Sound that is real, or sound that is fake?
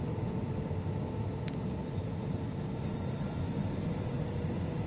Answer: real